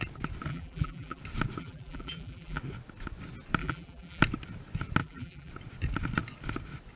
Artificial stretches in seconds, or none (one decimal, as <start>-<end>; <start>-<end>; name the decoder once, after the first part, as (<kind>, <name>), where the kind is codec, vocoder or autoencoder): 0.5-1.2 (vocoder, BigVGAN v2); 1.6-2.6; 3.6-4.2; 5.0-5.5